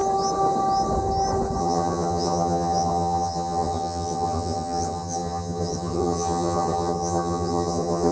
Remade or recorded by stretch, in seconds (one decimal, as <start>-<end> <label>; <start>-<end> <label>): 0.0-1.6 recorded; 1.6-8.1 remade